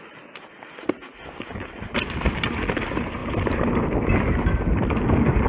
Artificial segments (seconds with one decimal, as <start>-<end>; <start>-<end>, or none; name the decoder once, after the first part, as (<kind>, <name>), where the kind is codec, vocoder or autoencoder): 3.2-3.8 (vocoder, BigVGAN v2)